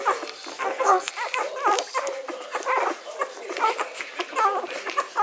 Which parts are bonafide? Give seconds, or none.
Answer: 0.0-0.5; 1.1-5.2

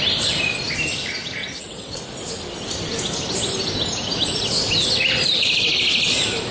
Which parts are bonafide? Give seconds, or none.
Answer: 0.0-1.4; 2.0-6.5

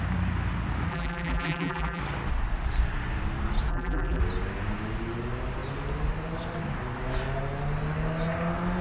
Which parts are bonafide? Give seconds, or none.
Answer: 0.0-0.9; 2.0-3.7; 4.2-8.8

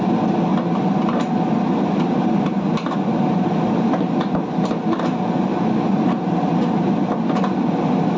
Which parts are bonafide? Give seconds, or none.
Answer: 0.0-8.2

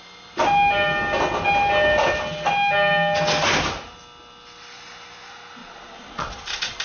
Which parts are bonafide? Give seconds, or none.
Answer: 0.0-5.6